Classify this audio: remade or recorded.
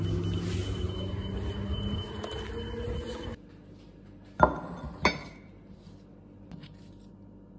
recorded